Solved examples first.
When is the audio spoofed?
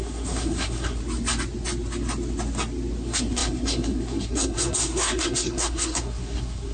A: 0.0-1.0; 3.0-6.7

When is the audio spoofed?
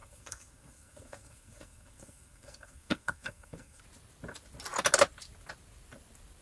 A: 0.0-3.8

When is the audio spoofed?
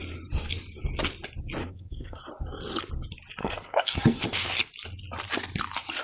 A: 1.6-2.2; 3.4-4.2